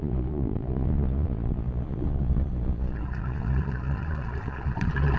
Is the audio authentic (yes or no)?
no